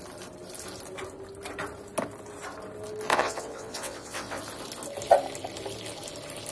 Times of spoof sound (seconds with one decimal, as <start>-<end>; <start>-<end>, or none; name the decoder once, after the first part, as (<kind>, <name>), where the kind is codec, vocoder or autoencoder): 3.1-4.4 (vocoder, WaveNeXt)